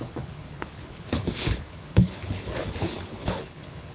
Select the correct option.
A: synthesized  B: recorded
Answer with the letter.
A